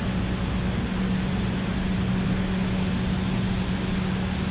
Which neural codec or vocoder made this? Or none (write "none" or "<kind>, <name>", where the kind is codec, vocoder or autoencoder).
none